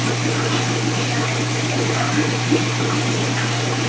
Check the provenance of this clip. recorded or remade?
recorded